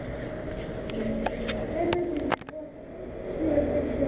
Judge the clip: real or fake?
real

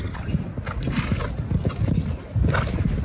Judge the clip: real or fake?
real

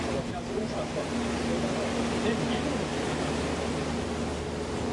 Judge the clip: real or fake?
real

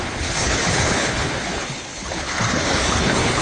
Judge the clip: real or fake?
fake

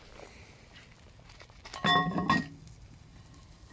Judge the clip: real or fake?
real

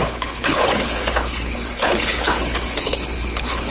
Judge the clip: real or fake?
fake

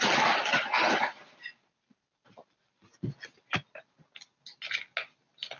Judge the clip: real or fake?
real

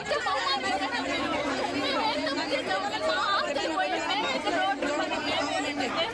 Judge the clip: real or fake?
real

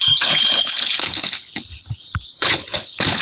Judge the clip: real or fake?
fake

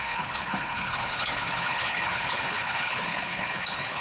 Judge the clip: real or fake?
fake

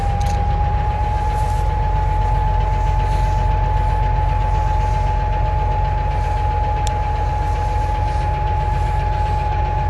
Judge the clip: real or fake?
real